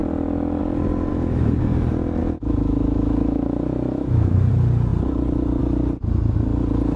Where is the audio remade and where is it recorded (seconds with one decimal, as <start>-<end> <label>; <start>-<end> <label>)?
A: 0.0-1.1 recorded; 1.1-1.6 remade; 1.6-2.2 recorded; 2.2-4.5 remade; 4.5-7.0 recorded